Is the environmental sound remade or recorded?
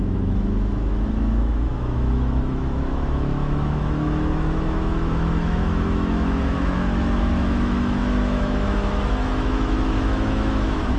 remade